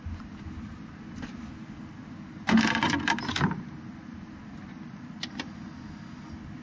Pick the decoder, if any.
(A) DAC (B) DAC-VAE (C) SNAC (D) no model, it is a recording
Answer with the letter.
D